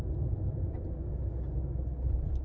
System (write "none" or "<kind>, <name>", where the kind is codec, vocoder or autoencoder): none